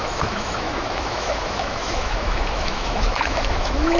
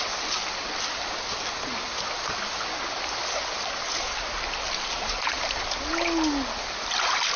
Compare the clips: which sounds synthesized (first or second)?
first